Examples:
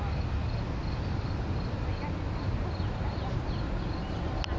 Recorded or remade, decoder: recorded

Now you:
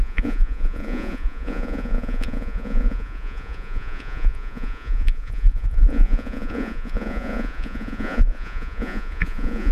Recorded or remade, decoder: remade, vocoder, Vocos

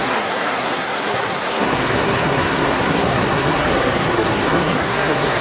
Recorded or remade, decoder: remade, codec, SNAC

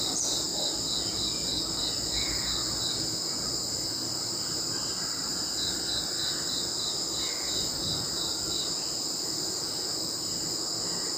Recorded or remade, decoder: recorded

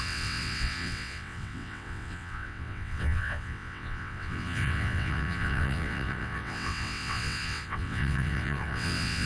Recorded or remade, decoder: remade, vocoder, WaveNeXt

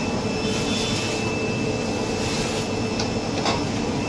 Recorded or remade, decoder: recorded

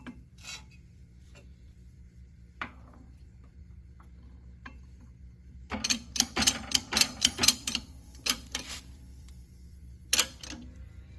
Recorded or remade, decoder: remade, vocoder, BigVGAN v2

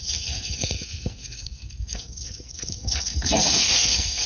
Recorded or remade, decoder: remade, codec, SNAC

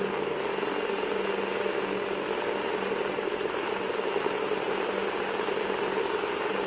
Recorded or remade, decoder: recorded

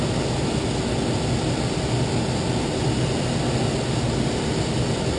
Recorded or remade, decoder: recorded